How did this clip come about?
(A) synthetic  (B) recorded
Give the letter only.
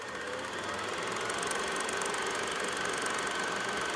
B